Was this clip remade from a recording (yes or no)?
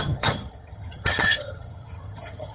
yes